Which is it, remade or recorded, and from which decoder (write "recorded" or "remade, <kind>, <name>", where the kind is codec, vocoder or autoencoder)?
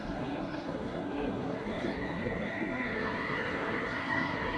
remade, codec, SNAC